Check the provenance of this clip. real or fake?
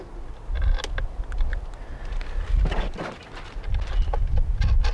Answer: real